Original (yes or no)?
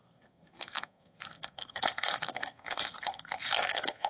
no